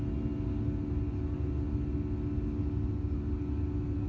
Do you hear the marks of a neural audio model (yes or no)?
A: no